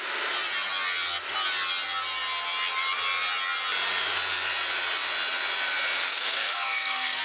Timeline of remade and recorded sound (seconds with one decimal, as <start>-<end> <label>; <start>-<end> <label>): 0.0-6.1 recorded; 6.1-7.2 remade